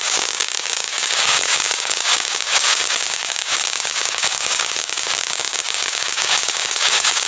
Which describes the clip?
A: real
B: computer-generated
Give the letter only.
B